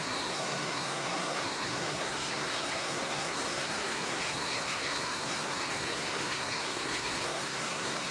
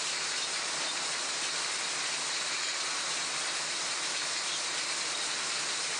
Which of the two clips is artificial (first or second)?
first